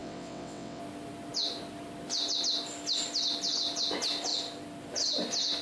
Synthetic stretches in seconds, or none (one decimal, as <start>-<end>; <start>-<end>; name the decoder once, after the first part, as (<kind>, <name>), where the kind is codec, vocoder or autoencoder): 0.0-0.8 (vocoder, WaveNeXt)